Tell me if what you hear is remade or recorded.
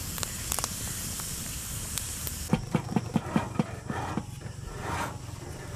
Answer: remade